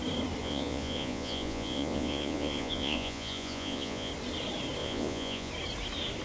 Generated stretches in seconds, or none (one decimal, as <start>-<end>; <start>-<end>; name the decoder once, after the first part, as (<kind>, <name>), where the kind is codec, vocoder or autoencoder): 0.4-4.1 (vocoder, Vocos); 4.8-5.5